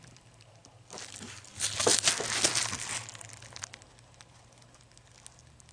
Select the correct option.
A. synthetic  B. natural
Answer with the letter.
B